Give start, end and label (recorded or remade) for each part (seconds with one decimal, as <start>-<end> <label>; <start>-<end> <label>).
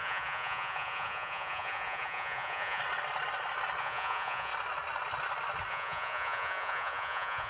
0.0-2.8 remade; 2.8-3.8 recorded; 3.8-4.5 remade; 4.5-5.7 recorded; 5.7-7.5 remade